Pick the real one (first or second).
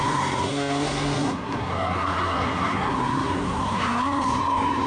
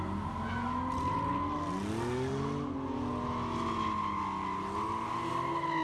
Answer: second